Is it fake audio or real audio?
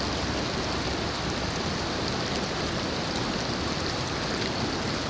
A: real